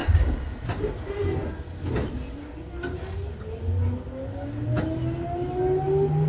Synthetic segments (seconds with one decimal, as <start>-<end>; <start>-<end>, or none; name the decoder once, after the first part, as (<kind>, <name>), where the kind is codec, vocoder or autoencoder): 0.0-0.9 (vocoder, BigVGAN v2)

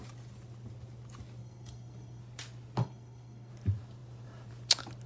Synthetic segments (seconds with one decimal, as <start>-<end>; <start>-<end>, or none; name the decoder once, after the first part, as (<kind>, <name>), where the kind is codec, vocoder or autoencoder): 1.4-2.2 (codec, SNAC); 2.8-3.5

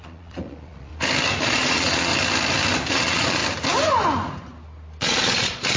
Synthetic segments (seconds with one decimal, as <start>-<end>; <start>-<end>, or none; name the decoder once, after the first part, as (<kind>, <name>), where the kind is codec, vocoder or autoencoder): 0.0-0.9 (vocoder, Vocos); 1.4-2.1; 2.9-3.4; 5.0-5.8